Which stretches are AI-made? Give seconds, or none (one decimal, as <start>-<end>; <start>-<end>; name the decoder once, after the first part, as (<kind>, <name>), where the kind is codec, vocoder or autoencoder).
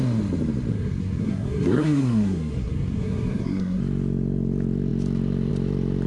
0.7-3.8 (codec, SNAC)